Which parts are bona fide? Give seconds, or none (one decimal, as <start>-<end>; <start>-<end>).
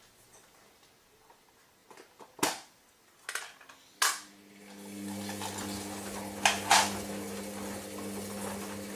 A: 0.0-9.0